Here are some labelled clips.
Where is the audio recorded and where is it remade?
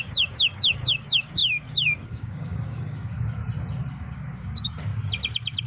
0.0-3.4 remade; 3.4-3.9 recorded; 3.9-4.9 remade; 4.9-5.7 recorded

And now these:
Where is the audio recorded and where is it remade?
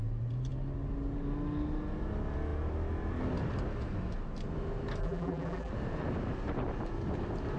0.0-5.0 recorded; 5.0-5.7 remade; 5.7-7.6 recorded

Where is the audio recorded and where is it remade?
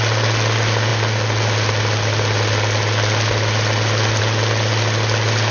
0.0-5.5 recorded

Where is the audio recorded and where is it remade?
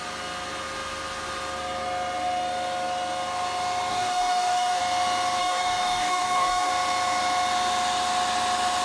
0.0-3.9 recorded; 3.9-4.8 remade; 4.8-5.4 recorded; 5.4-6.7 remade; 6.7-8.8 recorded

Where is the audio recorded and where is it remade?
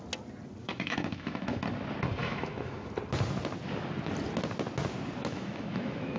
0.0-0.6 recorded; 0.6-1.6 remade; 1.6-2.2 recorded; 2.2-2.9 remade; 2.9-5.2 recorded; 5.2-6.2 remade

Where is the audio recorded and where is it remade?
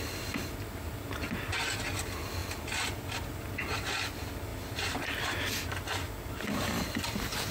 0.0-4.5 recorded; 4.5-6.4 remade; 6.4-7.5 recorded